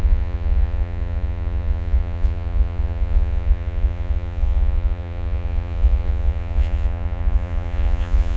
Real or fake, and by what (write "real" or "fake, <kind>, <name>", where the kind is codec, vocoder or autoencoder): fake, vocoder, Vocos